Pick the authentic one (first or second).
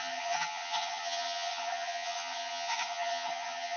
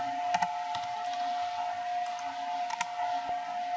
second